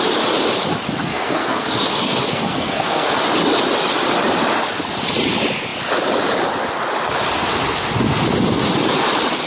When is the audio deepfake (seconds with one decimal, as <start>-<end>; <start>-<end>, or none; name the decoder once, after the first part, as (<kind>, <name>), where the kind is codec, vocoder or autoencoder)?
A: 1.0-3.1 (codec, SNAC)